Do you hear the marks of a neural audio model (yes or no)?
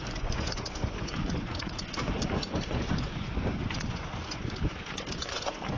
yes